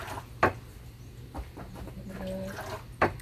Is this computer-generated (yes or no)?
no